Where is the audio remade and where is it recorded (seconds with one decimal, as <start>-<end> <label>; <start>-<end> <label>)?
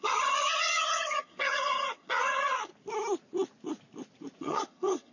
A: 0.0-2.7 remade; 2.7-4.4 recorded; 4.4-5.1 remade